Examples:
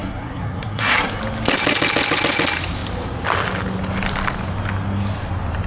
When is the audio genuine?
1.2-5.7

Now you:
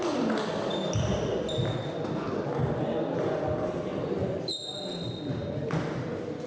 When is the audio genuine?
0.0-6.5